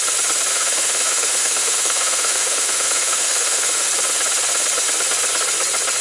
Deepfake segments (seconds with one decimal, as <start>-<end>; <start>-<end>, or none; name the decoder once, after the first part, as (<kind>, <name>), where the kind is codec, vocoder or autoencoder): 0.5-3.9 (autoencoder, DAC-VAE)